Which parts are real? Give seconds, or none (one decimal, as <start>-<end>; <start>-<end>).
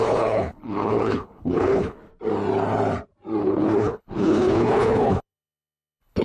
2.1-3.4